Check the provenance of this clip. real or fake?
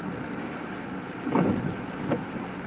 real